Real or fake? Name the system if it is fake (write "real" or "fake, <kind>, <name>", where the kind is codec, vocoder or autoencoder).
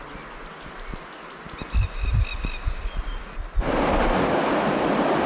real